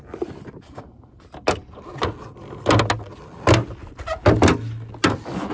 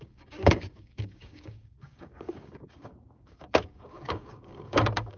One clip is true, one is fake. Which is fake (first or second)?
second